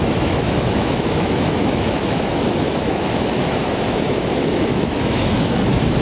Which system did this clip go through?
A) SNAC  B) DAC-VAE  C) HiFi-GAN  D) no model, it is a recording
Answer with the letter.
B